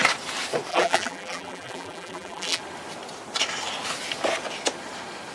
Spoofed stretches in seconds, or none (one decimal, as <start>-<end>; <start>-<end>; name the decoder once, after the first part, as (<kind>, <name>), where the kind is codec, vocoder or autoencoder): 0.7-2.6 (vocoder, BigVGAN v2)